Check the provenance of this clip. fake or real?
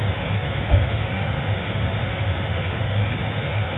fake